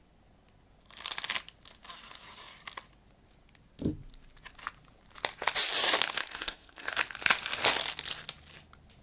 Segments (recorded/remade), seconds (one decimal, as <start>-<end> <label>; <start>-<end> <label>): 0.0-6.2 recorded; 6.2-6.9 remade; 6.9-9.0 recorded